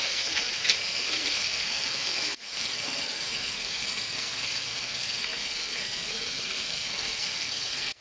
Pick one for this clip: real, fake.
fake